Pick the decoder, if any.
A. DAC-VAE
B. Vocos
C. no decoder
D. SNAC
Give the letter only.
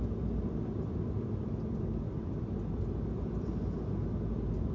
C